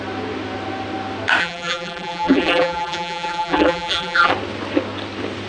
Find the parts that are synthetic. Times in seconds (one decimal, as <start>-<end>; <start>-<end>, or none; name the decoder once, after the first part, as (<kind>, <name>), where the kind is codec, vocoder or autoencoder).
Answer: 1.4-4.3 (vocoder, BigVGAN v2)